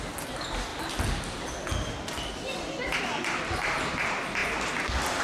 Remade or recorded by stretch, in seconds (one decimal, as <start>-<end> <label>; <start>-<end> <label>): 0.0-5.2 recorded